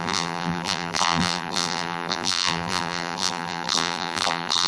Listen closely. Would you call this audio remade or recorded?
remade